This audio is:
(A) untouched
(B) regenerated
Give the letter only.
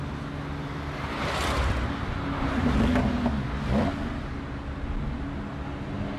A